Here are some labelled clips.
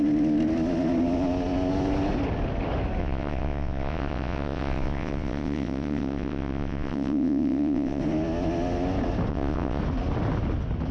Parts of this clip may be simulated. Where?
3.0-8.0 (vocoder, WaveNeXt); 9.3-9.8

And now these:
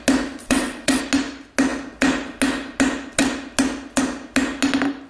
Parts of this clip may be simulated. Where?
0.4-1.0 (vocoder, WaveNeXt)

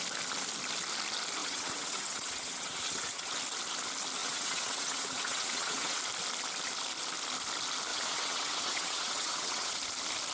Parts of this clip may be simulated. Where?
1.4-3.3 (vocoder, WaveNeXt); 4.2-6.0; 7.9-9.8